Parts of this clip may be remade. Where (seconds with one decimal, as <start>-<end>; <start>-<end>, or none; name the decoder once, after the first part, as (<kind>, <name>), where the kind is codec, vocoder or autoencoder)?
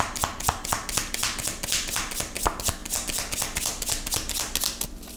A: none